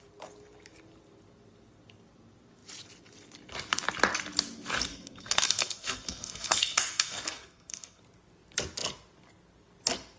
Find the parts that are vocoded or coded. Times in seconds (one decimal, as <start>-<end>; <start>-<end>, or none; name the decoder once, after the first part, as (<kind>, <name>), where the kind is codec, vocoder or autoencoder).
4.9-8.0 (codec, SNAC)